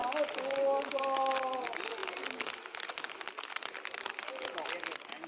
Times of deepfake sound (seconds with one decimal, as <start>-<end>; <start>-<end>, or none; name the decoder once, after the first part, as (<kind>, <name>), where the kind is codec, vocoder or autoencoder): none